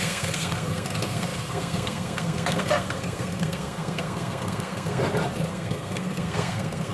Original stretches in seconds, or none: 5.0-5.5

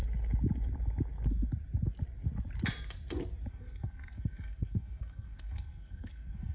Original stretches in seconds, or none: 0.0-3.5

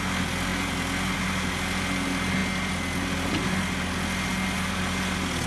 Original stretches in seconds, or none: 0.0-5.5

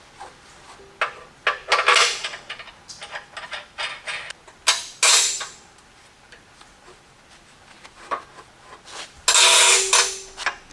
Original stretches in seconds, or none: 0.0-10.7

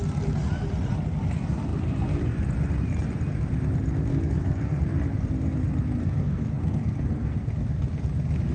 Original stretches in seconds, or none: 0.0-4.1; 4.8-6.0; 7.5-8.5

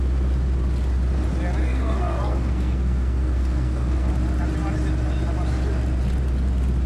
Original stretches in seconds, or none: 0.0-1.6; 4.1-6.9

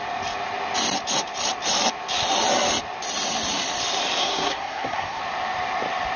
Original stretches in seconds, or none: 0.0-4.2; 5.2-6.2

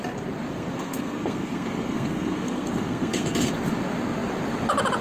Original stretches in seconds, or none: 0.0-0.5; 3.5-5.0